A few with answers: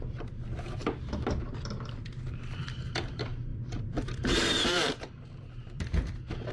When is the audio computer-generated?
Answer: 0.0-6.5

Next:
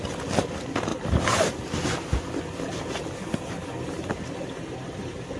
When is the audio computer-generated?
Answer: none

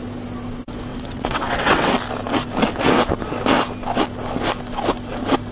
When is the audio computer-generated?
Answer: 0.9-1.9